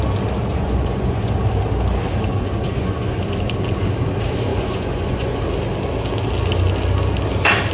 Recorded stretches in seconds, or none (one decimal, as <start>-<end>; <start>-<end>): 0.0-0.5; 1.3-2.3; 3.2-4.5; 5.4-7.7